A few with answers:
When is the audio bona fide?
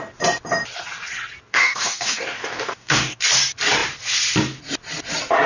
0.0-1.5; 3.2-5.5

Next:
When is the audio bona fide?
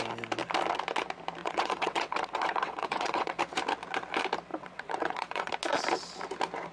0.0-1.4; 3.4-4.5; 5.5-6.7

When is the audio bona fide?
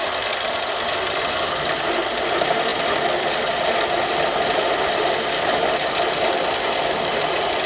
0.0-7.7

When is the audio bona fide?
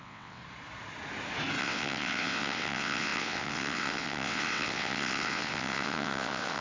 0.4-1.6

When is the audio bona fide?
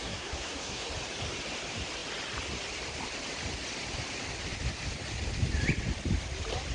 0.9-6.7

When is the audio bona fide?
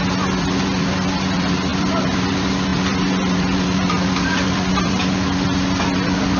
0.0-6.4